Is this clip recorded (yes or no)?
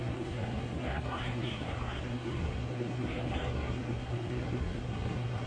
no